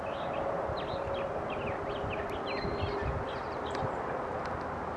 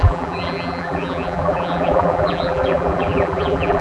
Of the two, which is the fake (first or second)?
second